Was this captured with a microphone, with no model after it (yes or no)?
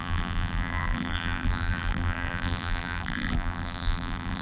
no